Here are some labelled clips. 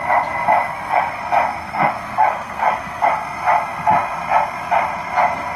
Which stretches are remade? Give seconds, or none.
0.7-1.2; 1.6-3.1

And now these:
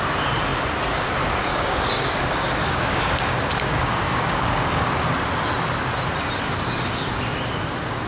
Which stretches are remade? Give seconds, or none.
1.5-4.9

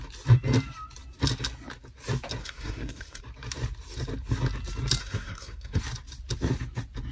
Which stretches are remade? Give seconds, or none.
2.4-3.2; 5.0-5.8

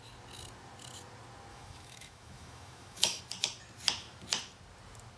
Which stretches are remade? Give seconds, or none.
1.5-3.2

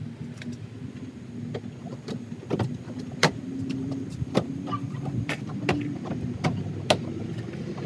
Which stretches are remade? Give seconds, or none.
1.8-5.5

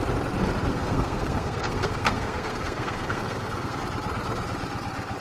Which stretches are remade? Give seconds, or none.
0.7-3.8

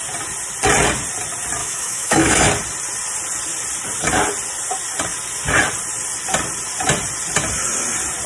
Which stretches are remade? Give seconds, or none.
1.6-2.5

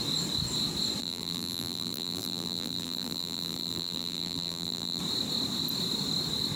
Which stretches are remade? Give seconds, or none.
1.0-5.0